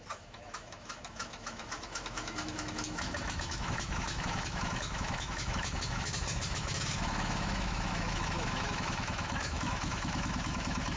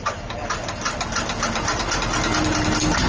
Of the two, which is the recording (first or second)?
second